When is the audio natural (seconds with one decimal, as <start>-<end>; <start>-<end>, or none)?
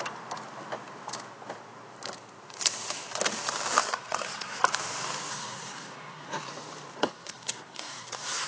0.0-3.8; 4.6-5.3; 6.5-7.0